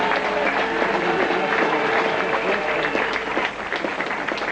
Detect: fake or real real